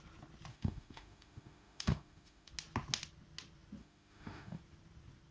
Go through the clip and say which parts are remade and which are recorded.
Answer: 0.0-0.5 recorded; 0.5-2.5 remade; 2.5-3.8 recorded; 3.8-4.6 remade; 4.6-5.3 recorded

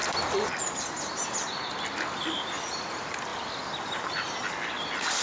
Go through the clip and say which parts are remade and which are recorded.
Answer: 0.0-5.2 recorded